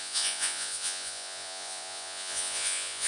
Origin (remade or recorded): remade